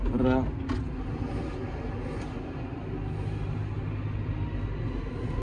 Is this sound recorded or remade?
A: recorded